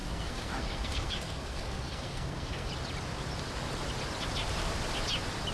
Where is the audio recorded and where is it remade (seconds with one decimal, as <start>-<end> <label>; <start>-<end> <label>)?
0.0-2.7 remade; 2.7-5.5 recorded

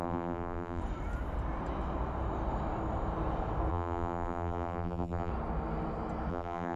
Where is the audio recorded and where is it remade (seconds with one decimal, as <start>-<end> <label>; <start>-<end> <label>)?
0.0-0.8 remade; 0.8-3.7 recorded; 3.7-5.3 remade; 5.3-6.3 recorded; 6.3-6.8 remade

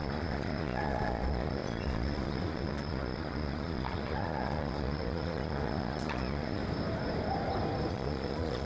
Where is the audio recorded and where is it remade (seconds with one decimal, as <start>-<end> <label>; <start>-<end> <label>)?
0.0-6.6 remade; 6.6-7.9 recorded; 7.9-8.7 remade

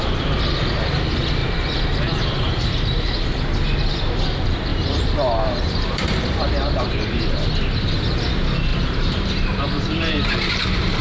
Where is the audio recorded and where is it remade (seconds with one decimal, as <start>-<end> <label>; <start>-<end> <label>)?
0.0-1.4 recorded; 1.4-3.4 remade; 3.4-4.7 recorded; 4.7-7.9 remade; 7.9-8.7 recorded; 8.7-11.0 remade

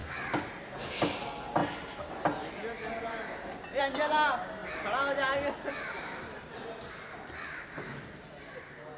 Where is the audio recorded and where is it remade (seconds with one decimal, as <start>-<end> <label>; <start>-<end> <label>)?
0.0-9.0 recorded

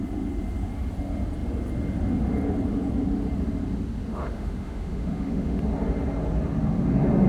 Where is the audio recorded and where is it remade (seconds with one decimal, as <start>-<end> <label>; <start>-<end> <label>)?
0.0-4.1 recorded; 4.1-5.6 remade; 5.6-7.3 recorded